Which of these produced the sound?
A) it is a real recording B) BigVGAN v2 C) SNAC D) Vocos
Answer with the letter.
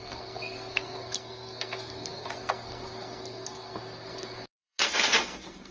C